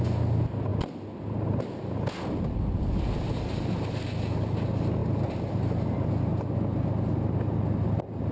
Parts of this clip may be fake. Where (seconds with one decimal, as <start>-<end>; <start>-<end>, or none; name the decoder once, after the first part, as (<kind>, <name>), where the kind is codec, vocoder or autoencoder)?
none